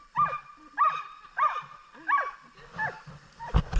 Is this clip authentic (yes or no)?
yes